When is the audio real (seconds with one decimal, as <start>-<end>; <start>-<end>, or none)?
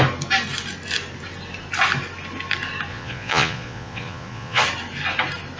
0.0-2.9; 4.6-5.6